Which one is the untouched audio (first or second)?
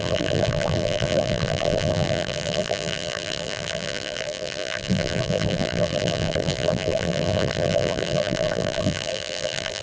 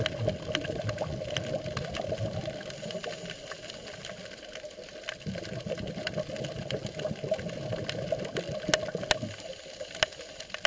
second